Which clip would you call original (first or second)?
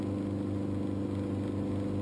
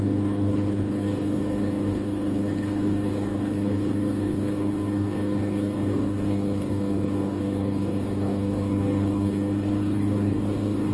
first